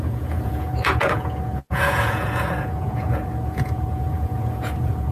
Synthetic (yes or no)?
yes